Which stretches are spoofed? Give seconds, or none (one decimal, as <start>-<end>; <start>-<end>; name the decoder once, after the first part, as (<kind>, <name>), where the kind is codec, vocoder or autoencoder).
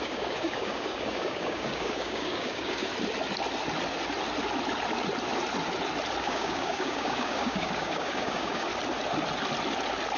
0.0-2.9 (codec, DAC); 6.2-8.7